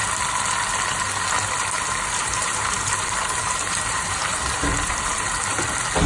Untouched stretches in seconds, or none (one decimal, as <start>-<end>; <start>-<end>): 0.0-2.2; 5.6-6.1